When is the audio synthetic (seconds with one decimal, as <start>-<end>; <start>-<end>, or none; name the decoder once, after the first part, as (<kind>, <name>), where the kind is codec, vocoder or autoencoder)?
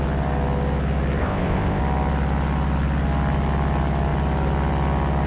1.2-1.8 (codec, ZipCodec)